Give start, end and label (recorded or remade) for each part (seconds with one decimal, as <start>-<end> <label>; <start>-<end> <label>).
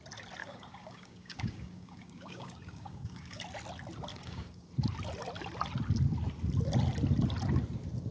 0.0-0.4 recorded; 0.4-3.4 remade; 3.4-4.1 recorded; 4.1-4.7 remade; 4.7-8.1 recorded